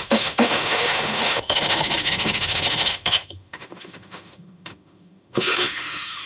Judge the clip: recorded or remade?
remade